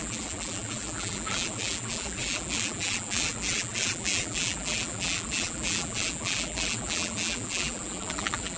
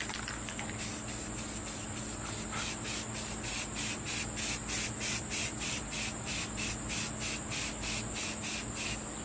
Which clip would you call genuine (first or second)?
second